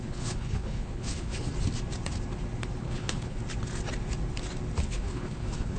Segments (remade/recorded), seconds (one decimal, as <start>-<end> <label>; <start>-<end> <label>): 0.0-1.5 remade; 1.5-2.8 recorded; 2.8-3.4 remade; 3.4-4.9 recorded; 4.9-5.8 remade